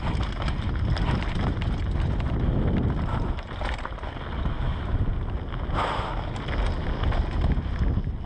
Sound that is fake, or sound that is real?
real